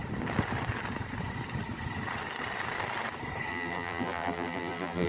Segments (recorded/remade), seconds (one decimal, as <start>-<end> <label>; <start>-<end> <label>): 0.0-3.5 recorded; 3.5-5.1 remade